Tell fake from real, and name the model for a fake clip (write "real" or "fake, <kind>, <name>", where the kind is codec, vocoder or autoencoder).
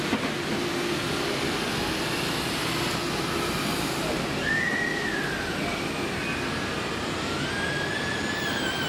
real